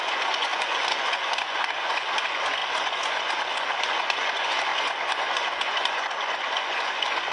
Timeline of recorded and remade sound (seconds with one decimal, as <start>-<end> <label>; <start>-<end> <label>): 0.0-7.3 remade